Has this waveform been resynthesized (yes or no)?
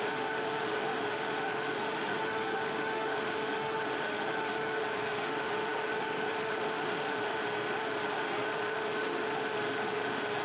yes